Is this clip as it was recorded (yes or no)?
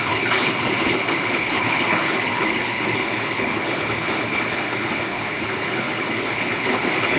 no